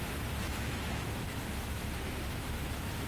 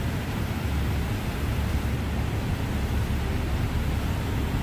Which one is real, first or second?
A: second